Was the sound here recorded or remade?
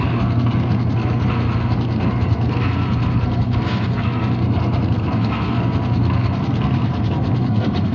remade